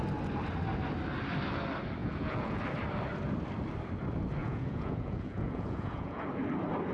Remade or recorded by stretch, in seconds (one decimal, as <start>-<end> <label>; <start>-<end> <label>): 0.0-2.0 recorded; 2.0-2.6 remade; 2.6-4.4 recorded; 4.4-6.2 remade; 6.2-6.9 recorded